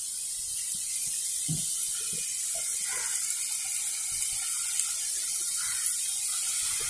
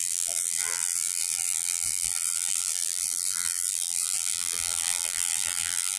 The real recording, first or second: first